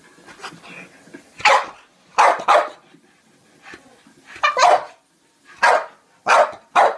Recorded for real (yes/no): yes